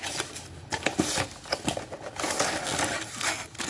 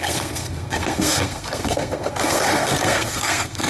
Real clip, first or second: first